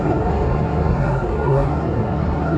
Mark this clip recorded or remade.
remade